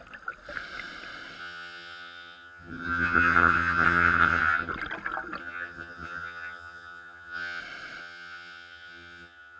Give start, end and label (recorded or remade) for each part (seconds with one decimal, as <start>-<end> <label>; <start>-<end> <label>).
0.0-1.4 recorded; 1.4-4.7 remade; 4.7-5.4 recorded; 5.4-7.6 remade; 7.6-8.0 recorded; 8.0-9.6 remade

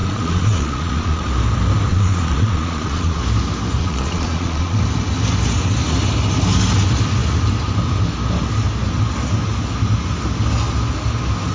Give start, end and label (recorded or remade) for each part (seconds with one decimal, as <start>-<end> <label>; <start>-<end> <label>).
0.0-1.3 remade; 1.3-1.9 recorded; 1.9-3.2 remade; 3.2-3.8 recorded; 3.8-4.8 remade; 4.8-11.5 recorded